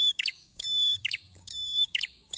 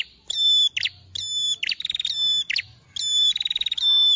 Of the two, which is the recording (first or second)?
second